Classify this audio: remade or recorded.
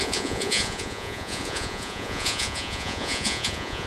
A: remade